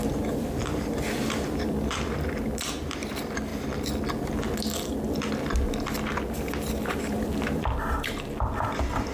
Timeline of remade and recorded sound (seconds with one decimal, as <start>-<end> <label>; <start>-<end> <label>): 0.0-3.5 remade; 3.5-7.0 recorded; 7.0-9.1 remade